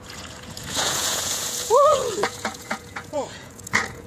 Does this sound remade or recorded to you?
remade